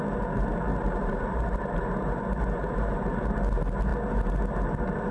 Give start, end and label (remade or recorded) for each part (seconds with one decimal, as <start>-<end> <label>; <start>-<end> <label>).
0.0-0.7 recorded; 0.7-2.2 remade; 2.2-2.6 recorded; 2.6-3.3 remade; 3.3-5.1 recorded